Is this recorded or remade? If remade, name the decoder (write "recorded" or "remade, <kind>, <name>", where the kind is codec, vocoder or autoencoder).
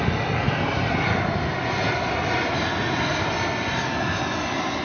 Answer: recorded